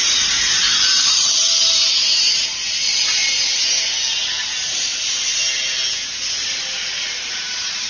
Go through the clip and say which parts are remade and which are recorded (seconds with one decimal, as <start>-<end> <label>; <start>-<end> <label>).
0.0-3.2 remade; 3.2-4.4 recorded; 4.4-4.9 remade; 4.9-6.5 recorded; 6.5-7.9 remade